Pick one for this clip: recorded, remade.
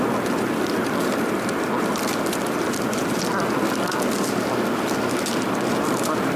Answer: recorded